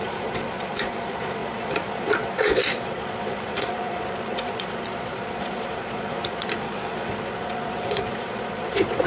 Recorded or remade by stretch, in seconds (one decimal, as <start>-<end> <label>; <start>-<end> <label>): 0.0-9.1 remade